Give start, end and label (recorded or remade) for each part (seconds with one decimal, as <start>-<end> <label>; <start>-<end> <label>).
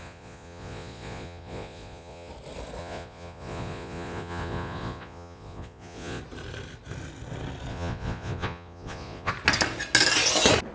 0.0-2.3 remade; 2.3-2.8 recorded; 2.8-6.2 remade; 6.2-7.7 recorded; 7.7-9.3 remade; 9.3-10.7 recorded